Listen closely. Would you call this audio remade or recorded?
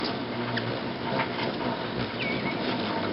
recorded